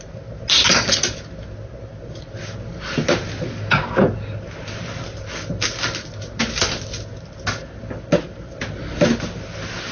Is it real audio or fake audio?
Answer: real